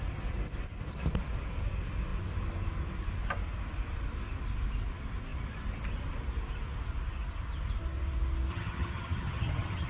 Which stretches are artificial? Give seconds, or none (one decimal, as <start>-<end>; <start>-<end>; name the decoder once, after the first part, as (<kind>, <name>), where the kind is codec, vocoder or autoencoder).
8.5-9.9 (vocoder, HiFi-GAN)